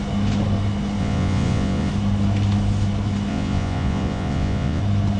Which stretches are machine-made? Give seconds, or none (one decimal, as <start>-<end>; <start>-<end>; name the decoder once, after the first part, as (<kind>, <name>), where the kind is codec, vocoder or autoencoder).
1.0-1.9 (vocoder, Vocos); 3.3-4.8